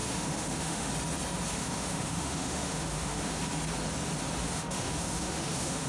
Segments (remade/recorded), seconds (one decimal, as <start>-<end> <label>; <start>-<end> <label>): 0.0-0.9 remade; 0.9-1.5 recorded; 1.5-3.4 remade; 3.4-4.4 recorded; 4.4-5.9 remade

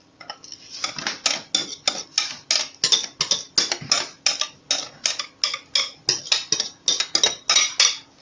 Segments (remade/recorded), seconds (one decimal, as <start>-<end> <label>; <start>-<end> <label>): 0.0-8.2 recorded

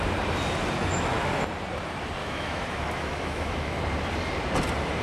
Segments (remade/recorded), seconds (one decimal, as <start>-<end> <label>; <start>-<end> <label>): 0.0-0.8 recorded; 0.8-1.4 remade; 1.4-2.2 recorded; 2.2-3.8 remade; 3.8-5.0 recorded

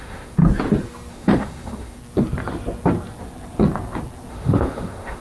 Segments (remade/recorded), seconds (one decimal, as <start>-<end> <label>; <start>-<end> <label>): 0.0-0.4 remade; 0.4-1.1 recorded; 1.1-2.0 remade; 2.0-4.3 recorded; 4.3-5.2 remade

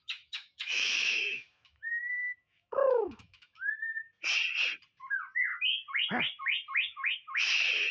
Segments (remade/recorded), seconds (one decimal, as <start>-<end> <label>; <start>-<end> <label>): 0.0-3.7 remade; 3.7-7.9 recorded

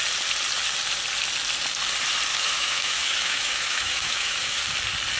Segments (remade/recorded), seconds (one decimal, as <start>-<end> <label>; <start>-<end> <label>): 0.0-2.3 recorded; 2.3-4.6 remade; 4.6-5.2 recorded

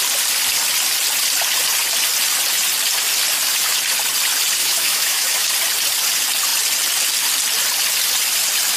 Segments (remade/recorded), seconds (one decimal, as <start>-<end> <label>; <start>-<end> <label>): 0.0-4.6 recorded; 4.6-5.5 remade; 5.5-8.8 recorded